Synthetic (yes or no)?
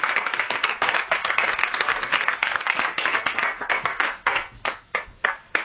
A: yes